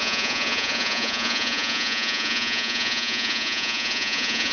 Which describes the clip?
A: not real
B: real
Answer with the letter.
A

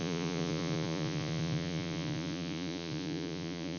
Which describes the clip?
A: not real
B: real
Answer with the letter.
A